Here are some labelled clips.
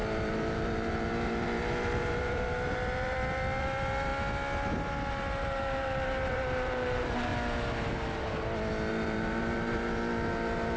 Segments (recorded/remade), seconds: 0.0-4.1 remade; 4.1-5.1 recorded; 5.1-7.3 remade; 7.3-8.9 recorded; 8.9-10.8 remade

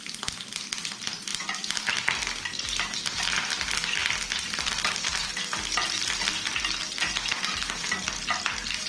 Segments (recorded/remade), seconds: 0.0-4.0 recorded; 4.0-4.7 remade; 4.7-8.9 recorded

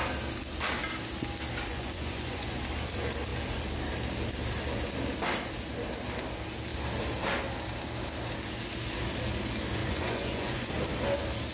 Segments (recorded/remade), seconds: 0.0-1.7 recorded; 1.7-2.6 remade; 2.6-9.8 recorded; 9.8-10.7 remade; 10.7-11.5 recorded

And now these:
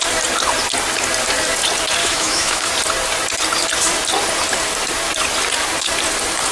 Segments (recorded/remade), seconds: 0.0-2.0 recorded; 2.0-2.7 remade; 2.7-6.5 recorded

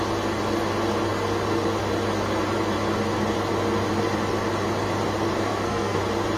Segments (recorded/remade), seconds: 0.0-5.5 recorded; 5.5-6.0 remade; 6.0-6.4 recorded

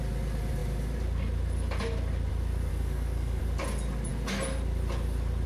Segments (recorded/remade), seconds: 0.0-2.7 recorded; 2.7-3.4 remade; 3.4-5.5 recorded

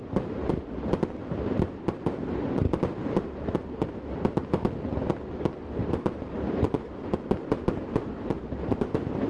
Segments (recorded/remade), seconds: 0.0-0.7 remade; 0.7-1.2 recorded; 1.2-4.1 remade; 4.1-5.8 recorded; 5.8-7.2 remade; 7.2-7.8 recorded; 7.8-9.3 remade